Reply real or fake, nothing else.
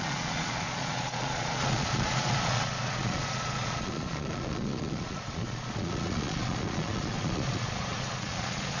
fake